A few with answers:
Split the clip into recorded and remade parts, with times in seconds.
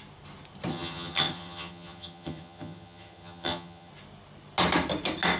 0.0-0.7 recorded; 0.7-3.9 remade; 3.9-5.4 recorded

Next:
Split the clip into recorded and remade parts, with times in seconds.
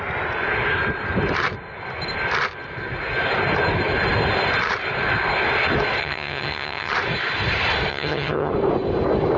0.0-6.0 recorded; 6.0-6.9 remade; 6.9-7.9 recorded; 7.9-8.5 remade; 8.5-9.4 recorded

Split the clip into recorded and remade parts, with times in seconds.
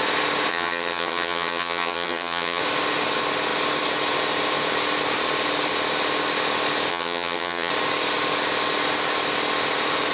0.0-0.5 recorded; 0.5-2.6 remade; 2.6-6.9 recorded; 6.9-7.7 remade; 7.7-10.1 recorded